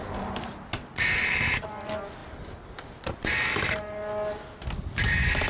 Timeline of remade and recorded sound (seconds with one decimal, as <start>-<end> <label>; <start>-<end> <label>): 0.0-5.5 recorded